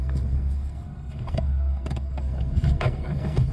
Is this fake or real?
fake